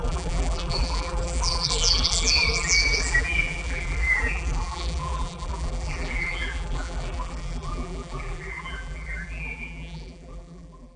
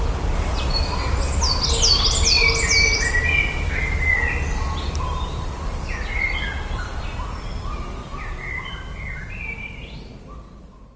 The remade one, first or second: first